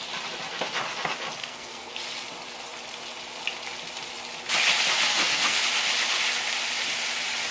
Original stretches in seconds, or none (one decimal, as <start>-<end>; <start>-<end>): 0.0-1.4; 1.9-5.1; 5.6-7.5